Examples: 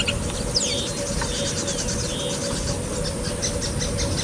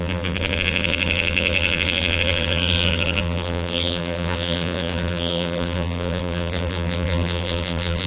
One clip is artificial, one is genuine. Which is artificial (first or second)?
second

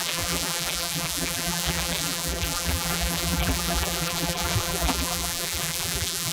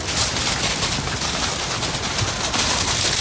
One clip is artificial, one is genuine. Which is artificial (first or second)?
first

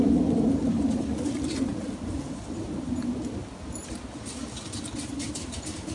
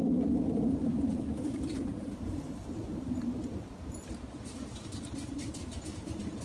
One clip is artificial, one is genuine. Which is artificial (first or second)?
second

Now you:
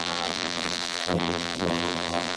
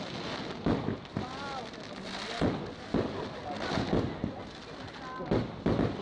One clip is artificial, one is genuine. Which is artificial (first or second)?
first